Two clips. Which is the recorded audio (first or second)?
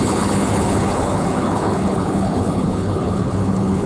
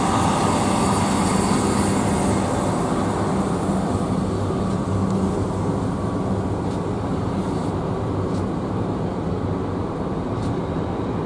second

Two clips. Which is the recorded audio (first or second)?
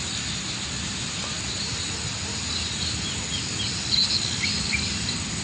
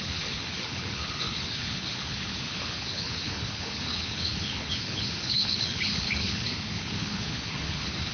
first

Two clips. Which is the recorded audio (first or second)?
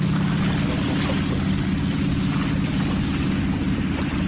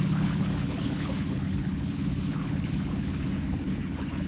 first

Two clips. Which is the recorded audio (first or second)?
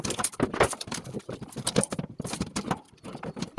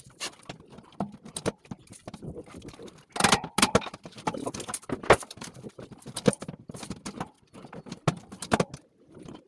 second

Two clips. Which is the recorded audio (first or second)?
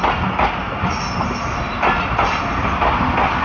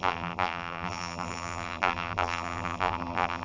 first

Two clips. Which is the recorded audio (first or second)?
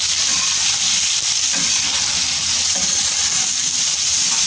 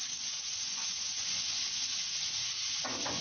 first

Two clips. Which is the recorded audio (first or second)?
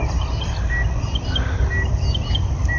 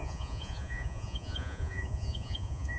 first